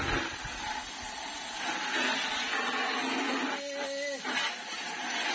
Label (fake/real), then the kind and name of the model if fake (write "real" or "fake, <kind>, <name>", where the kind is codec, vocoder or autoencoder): real